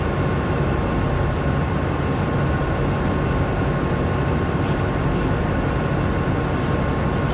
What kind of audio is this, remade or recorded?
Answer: recorded